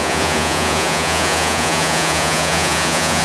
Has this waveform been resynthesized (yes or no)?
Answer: yes